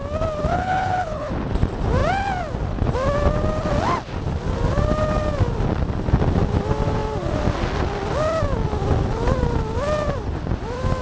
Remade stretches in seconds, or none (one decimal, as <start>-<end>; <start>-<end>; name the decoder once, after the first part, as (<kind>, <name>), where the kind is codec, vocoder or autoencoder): 0.5-1.3 (codec, HILCodec)